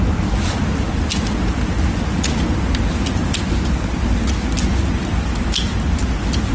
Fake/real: real